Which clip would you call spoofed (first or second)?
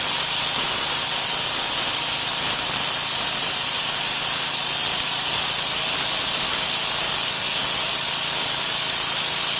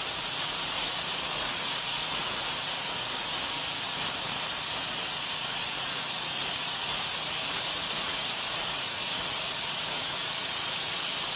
second